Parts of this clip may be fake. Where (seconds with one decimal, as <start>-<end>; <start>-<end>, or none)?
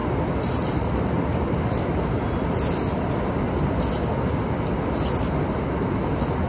none